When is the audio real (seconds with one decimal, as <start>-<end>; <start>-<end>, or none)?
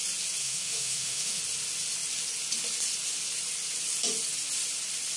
0.0-0.4; 1.4-5.2